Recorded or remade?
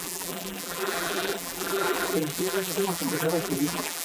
remade